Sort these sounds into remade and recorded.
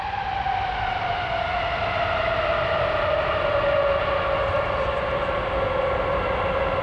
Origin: recorded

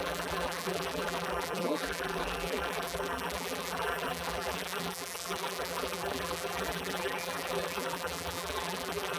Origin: remade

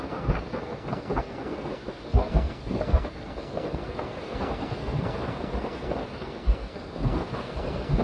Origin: remade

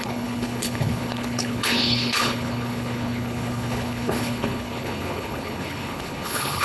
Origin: remade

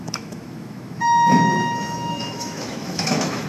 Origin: remade